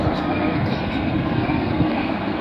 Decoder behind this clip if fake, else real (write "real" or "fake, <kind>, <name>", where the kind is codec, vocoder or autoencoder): fake, codec, SNAC